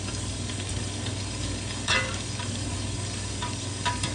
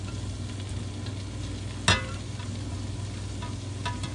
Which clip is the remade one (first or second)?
first